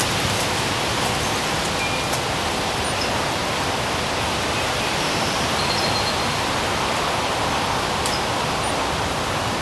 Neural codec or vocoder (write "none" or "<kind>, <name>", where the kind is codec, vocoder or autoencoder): none